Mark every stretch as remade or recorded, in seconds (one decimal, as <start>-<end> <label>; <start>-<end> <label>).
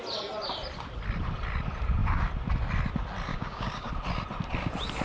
0.0-3.3 recorded; 3.3-3.9 remade; 3.9-5.0 recorded